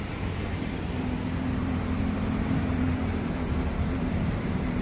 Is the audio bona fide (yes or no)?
no